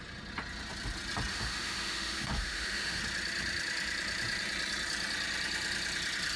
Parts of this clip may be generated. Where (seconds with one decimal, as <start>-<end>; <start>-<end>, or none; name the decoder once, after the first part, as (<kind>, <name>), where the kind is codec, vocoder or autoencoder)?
1.3-3.0 (autoencoder, DAC-VAE)